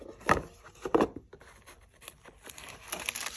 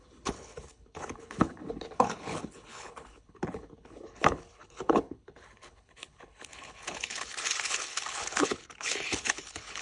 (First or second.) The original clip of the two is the first